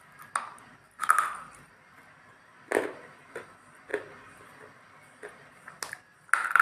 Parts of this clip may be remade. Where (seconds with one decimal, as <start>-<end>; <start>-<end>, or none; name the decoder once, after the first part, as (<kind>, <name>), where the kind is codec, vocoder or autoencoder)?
0.7-2.6 (vocoder, BigVGAN v2)